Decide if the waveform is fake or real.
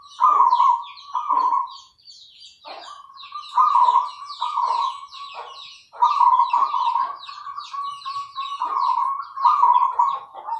fake